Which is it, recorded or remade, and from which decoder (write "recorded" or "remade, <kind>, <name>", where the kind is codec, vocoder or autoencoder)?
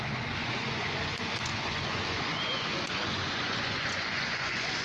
remade, vocoder, Vocos